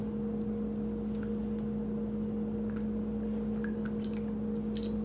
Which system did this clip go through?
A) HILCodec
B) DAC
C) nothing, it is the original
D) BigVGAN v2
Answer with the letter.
C